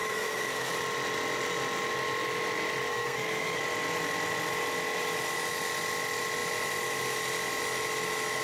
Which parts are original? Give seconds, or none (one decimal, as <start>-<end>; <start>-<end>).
0.7-2.9; 3.6-8.4